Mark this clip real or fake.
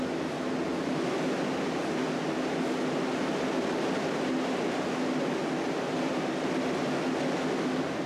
real